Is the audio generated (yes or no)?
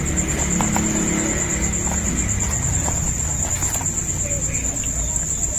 no